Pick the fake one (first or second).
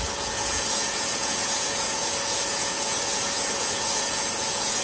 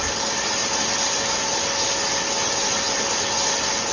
first